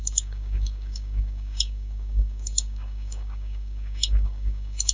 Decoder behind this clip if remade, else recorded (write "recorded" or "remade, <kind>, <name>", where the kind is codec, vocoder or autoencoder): remade, codec, DAC